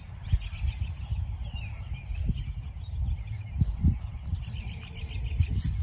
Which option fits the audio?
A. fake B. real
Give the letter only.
B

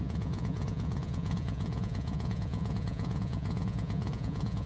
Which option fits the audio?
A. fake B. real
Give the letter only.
A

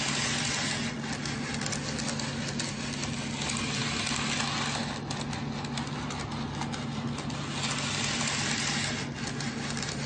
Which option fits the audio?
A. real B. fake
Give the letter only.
A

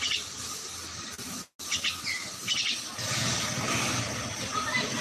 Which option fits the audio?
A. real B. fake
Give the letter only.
A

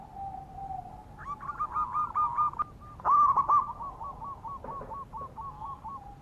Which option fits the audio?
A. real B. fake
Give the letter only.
A